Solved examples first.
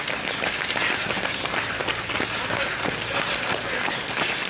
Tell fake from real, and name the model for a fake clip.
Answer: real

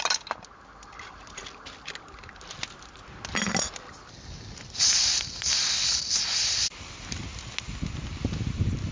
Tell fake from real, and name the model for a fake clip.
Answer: real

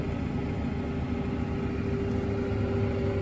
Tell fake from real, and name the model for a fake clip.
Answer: real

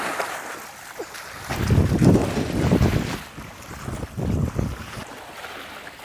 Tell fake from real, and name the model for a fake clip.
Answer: real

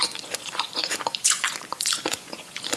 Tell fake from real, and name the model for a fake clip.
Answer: fake, vocoder, Vocos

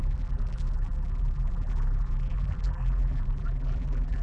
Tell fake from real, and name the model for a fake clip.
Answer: fake, vocoder, BigVGAN v2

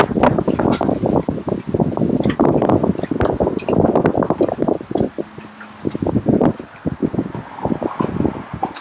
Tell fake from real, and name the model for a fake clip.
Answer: real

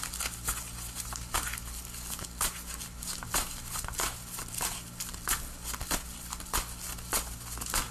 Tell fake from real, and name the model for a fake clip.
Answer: real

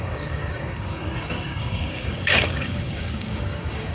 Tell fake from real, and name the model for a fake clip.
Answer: fake, codec, DAC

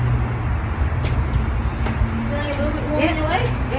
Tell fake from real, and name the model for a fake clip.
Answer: real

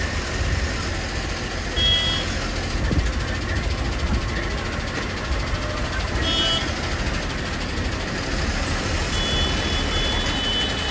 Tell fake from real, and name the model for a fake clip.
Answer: real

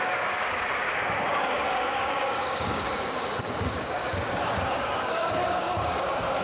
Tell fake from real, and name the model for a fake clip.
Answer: fake, codec, DAC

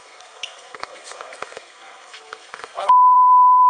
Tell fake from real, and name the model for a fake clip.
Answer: fake, codec, SNAC